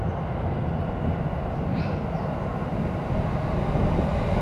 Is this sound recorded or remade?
recorded